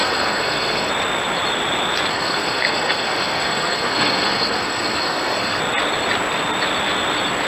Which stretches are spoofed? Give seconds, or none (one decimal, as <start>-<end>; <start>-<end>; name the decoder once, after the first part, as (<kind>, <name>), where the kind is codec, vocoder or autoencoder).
0.0-0.9 (codec, SNAC); 2.1-5.6